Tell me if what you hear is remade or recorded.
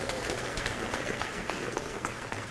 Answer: remade